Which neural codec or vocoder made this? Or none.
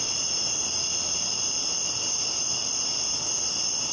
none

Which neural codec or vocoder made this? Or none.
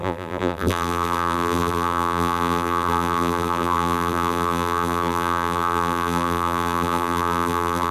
vocoder, BigVGAN v2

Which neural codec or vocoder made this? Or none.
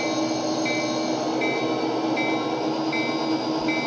none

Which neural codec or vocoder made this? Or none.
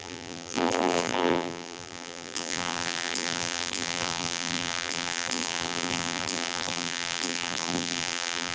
vocoder, BigVGAN v2